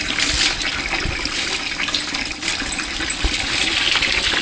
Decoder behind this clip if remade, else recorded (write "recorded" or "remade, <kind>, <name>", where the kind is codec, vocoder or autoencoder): recorded